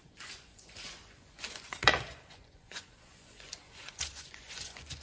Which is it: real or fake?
fake